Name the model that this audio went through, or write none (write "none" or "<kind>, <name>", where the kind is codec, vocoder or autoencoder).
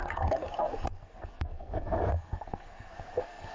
codec, SNAC